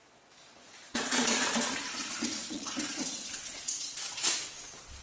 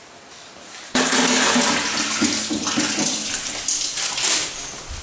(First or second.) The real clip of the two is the second